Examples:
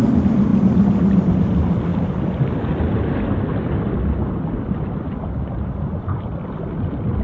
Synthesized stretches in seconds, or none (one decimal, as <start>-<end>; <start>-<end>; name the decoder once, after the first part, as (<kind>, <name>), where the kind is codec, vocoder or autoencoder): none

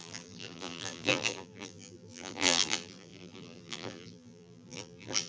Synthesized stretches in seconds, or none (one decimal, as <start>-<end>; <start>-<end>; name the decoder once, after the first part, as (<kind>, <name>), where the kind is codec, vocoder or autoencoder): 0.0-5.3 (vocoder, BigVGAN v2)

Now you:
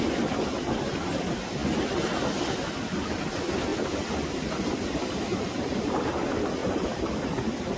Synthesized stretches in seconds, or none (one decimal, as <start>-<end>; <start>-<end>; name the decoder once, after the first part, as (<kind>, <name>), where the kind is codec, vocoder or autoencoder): 5.3-6.1 (vocoder, BigVGAN v2); 6.6-7.8